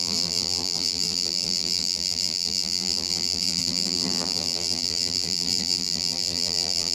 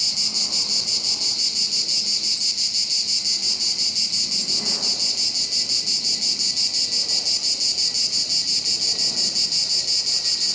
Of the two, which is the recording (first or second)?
second